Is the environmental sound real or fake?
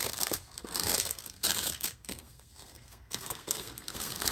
fake